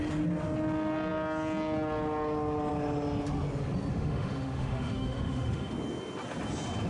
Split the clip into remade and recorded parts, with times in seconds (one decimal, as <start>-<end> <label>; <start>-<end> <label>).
0.0-3.9 recorded; 3.9-5.7 remade; 5.7-6.9 recorded